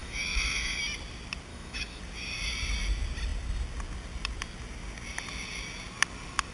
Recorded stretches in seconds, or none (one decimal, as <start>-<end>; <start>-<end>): 0.8-1.5; 2.0-6.5